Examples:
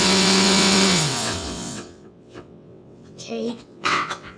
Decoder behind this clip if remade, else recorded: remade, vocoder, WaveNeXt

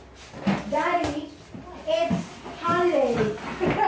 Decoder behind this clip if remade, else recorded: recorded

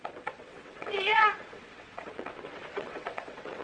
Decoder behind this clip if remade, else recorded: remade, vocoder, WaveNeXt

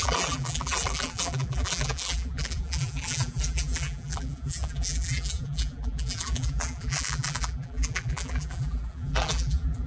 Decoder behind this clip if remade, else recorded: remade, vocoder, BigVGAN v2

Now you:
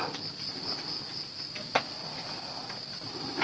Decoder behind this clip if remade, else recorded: recorded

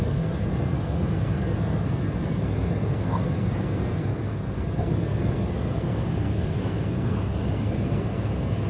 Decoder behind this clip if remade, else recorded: remade, codec, SNAC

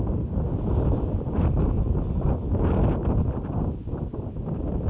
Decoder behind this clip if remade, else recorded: recorded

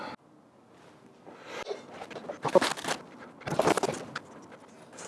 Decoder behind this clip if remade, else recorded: recorded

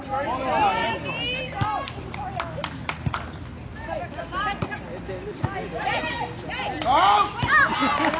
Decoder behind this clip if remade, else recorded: recorded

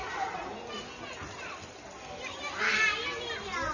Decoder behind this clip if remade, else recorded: recorded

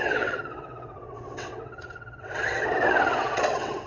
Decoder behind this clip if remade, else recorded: remade, vocoder, WaveNeXt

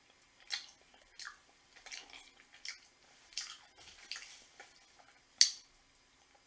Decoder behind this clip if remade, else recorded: recorded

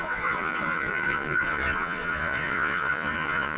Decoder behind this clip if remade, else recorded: remade, vocoder, Vocos